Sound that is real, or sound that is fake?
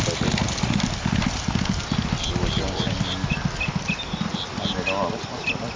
real